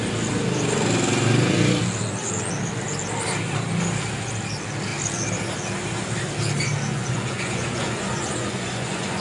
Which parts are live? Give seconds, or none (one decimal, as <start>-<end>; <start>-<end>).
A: 0.0-6.9